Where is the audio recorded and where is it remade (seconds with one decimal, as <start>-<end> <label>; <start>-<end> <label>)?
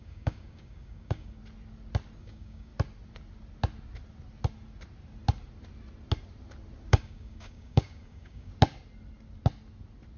0.0-1.4 remade; 1.4-2.2 recorded; 2.2-2.7 remade; 2.7-6.9 recorded; 6.9-8.5 remade; 8.5-10.2 recorded